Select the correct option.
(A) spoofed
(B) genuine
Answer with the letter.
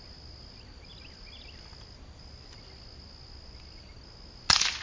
B